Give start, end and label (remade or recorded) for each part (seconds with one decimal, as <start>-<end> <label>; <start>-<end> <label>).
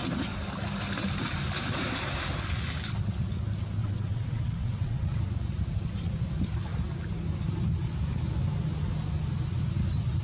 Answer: 0.0-3.8 recorded; 3.8-5.2 remade; 5.2-10.2 recorded